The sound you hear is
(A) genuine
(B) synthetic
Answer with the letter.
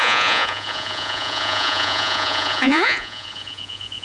B